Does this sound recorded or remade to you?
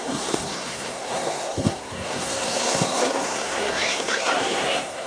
remade